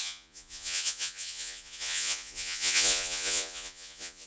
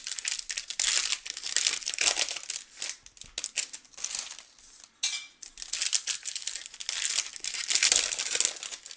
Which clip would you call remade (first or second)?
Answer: first